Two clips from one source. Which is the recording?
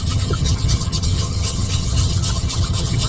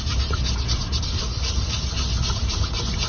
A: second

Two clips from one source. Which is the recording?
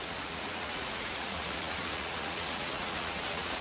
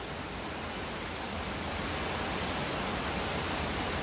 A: second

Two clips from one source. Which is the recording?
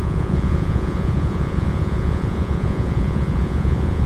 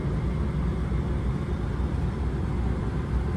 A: second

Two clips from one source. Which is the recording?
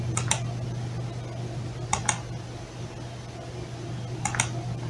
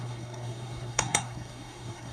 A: first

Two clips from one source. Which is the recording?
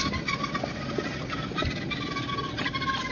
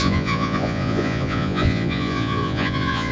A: first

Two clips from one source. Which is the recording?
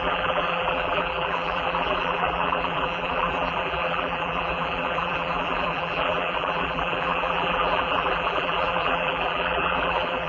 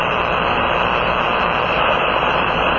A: second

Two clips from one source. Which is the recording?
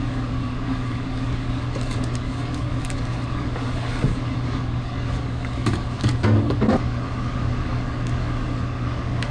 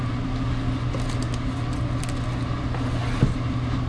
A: second